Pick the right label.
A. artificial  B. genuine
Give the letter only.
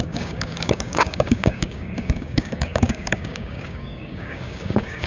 A